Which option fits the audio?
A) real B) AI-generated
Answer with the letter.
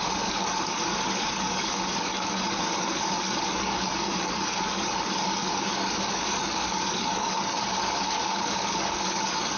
B